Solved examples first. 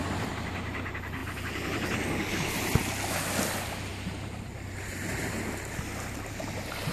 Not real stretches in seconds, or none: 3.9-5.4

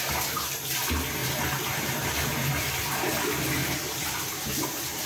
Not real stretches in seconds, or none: 1.2-2.5; 3.6-5.1